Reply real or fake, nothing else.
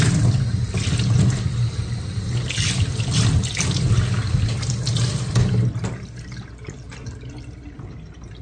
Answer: real